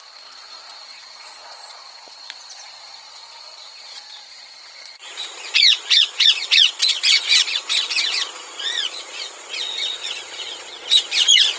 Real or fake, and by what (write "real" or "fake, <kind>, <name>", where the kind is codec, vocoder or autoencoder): fake, vocoder, Vocos